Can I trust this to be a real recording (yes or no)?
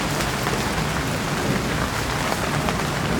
yes